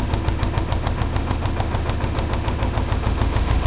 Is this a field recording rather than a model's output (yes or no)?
no